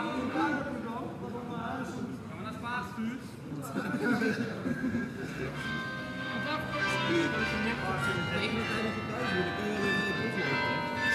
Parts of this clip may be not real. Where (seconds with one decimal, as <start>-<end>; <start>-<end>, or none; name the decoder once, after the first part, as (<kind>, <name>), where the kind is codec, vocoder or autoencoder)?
0.0-0.6 (codec, SNAC); 4.2-7.8